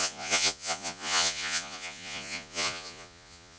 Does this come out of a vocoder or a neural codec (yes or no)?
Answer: yes